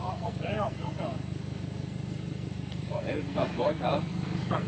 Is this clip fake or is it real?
fake